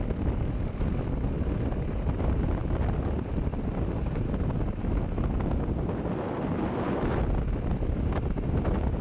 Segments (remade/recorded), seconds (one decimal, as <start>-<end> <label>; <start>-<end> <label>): 0.0-9.0 recorded